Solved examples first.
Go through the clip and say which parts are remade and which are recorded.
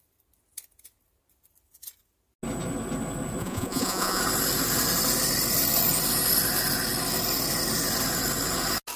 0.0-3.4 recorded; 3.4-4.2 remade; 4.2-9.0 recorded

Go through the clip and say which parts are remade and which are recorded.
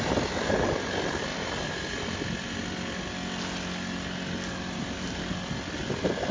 0.0-6.3 recorded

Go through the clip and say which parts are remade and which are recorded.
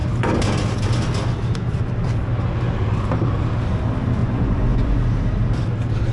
0.0-4.2 recorded; 4.2-5.1 remade; 5.1-6.1 recorded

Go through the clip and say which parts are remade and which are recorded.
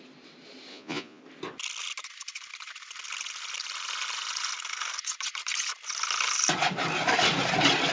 0.0-0.7 recorded; 0.7-1.2 remade; 1.2-7.9 recorded